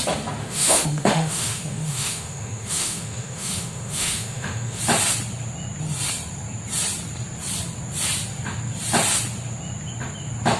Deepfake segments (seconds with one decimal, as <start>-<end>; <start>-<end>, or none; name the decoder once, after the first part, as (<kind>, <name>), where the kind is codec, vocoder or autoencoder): 0.4-4.8 (autoencoder, DAC-VAE)

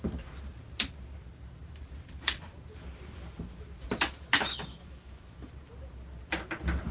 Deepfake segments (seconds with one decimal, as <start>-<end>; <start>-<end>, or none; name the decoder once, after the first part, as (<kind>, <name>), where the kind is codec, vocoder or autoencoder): 4.7-5.5 (autoencoder, DAC-VAE)

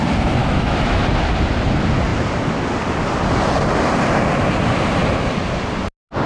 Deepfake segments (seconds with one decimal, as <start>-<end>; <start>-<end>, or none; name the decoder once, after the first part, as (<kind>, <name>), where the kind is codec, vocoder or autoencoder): 0.4-1.0 (autoencoder, DAC-VAE)

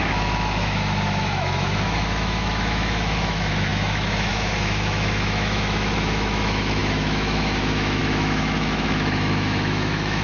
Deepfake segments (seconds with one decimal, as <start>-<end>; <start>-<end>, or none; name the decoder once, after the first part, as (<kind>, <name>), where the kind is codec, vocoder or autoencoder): 0.0-10.2 (autoencoder, DAC-VAE)

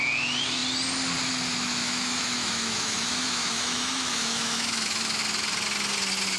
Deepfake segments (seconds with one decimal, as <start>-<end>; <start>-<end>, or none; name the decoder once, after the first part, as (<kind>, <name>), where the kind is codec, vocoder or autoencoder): 1.8-5.2 (autoencoder, DAC-VAE)

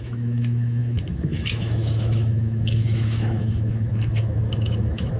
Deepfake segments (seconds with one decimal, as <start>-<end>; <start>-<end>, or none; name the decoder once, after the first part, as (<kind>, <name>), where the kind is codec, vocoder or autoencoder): 0.0-5.2 (autoencoder, DAC-VAE)

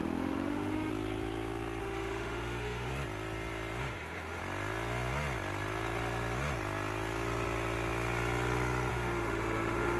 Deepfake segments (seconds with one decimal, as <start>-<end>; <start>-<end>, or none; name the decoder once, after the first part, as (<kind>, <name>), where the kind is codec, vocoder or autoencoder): 0.0-0.9 (autoencoder, DAC-VAE); 1.8-2.9; 3.8-4.4; 8.9-10.0